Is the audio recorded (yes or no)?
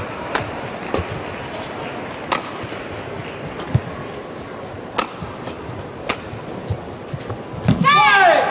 yes